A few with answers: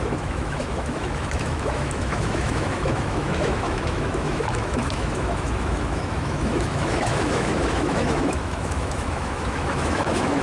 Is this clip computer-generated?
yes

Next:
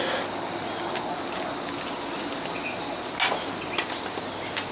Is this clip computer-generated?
no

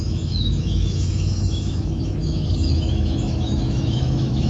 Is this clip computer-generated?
yes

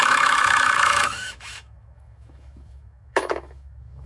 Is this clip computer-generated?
yes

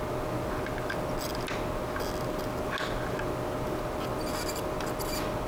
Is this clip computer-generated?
no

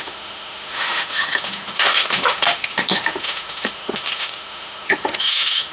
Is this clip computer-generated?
yes